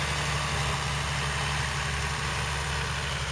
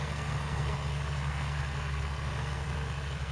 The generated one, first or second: second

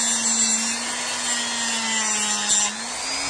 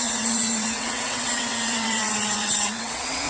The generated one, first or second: second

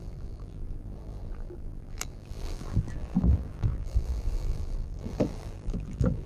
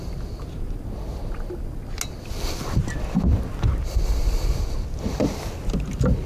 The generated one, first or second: first